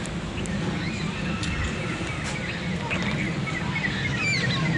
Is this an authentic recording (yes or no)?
yes